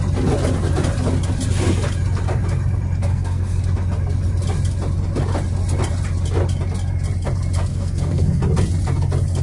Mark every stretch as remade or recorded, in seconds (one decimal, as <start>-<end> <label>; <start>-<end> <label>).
0.0-3.1 recorded; 3.1-3.6 remade; 3.6-7.7 recorded; 7.7-8.4 remade; 8.4-9.4 recorded